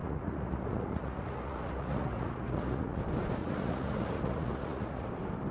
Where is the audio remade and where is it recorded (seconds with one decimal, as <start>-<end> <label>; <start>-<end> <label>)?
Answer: 0.0-3.0 remade; 3.0-3.4 recorded; 3.4-5.1 remade; 5.1-5.5 recorded